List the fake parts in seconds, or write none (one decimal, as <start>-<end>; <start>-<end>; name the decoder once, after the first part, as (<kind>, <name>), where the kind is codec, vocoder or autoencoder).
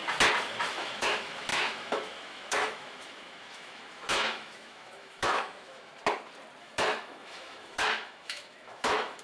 0.6-5.9 (autoencoder, DAC-VAE); 6.6-9.2